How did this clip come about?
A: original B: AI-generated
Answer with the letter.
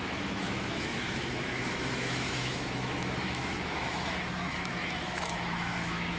B